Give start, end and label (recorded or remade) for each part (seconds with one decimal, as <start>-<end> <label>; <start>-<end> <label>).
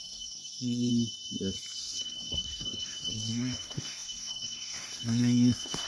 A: 0.0-0.9 remade; 0.9-1.8 recorded; 1.8-5.9 remade